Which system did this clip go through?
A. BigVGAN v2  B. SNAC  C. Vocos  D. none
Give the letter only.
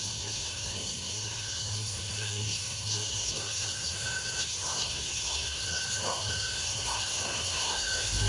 B